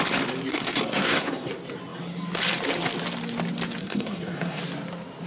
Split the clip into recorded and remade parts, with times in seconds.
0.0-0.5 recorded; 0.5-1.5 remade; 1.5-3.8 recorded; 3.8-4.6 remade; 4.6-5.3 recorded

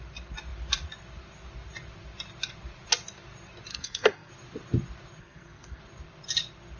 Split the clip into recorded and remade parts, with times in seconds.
0.0-3.7 recorded; 3.7-4.3 remade; 4.3-5.2 recorded; 5.2-5.8 remade; 5.8-6.8 recorded

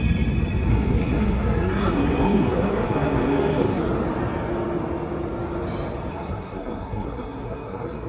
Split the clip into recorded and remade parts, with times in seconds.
0.0-0.7 recorded; 0.7-3.8 remade; 3.8-6.1 recorded; 6.1-8.1 remade

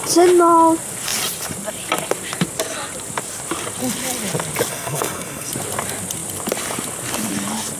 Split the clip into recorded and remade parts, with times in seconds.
0.0-4.7 recorded; 4.7-5.5 remade; 5.5-7.8 recorded

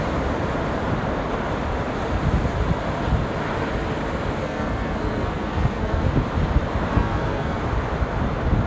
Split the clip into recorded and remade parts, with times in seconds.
0.0-4.4 recorded; 4.4-6.1 remade; 6.1-6.9 recorded; 6.9-7.6 remade; 7.6-8.7 recorded

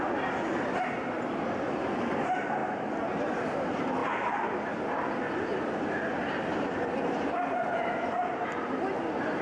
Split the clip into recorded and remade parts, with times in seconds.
0.0-9.4 recorded

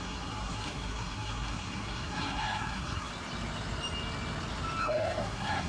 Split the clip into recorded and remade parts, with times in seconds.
0.0-3.1 remade; 3.1-4.8 recorded; 4.8-5.7 remade